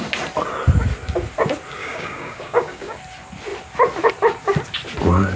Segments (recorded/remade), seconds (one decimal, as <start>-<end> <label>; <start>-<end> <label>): 0.0-1.8 recorded; 1.8-3.0 remade; 3.0-5.4 recorded